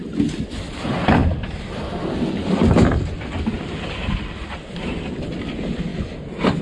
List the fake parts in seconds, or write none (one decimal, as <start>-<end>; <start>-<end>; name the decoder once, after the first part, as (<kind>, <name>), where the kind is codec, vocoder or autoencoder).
1.2-5.2 (vocoder, BigVGAN v2)